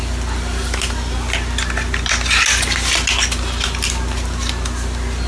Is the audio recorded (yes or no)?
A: yes